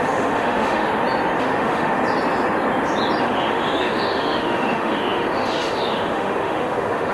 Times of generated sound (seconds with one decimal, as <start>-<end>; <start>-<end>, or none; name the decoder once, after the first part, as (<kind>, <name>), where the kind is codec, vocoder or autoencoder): 0.0-0.9 (autoencoder, DAC-VAE); 1.4-2.0; 3.2-7.1

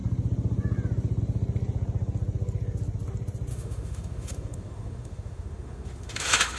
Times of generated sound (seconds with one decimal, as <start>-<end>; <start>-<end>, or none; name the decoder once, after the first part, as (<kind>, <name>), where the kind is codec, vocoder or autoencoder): 3.5-6.6 (autoencoder, DAC-VAE)

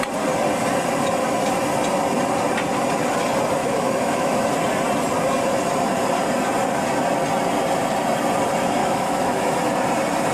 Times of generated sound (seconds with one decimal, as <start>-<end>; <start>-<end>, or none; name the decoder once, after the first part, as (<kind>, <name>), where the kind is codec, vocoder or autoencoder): 3.6-4.5 (autoencoder, DAC-VAE); 8.8-9.6

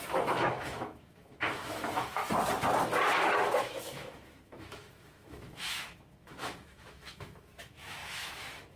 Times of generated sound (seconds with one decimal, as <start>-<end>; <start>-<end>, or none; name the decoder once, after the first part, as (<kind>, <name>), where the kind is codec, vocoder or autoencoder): 0.0-2.2 (autoencoder, DAC-VAE); 3.6-8.8